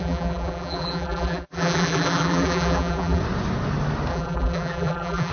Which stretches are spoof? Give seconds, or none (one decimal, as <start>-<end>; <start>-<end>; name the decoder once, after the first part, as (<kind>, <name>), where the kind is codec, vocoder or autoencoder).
0.0-3.2 (vocoder, BigVGAN v2); 4.1-5.3